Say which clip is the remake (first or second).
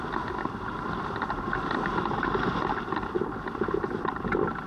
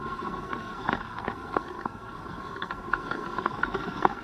second